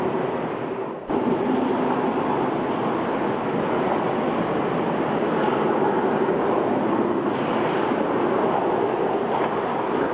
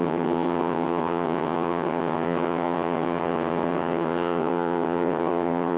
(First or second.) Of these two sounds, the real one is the first